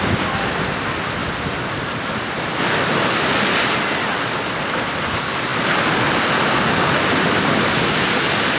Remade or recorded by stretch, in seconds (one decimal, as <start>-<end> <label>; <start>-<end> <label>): 0.0-8.6 recorded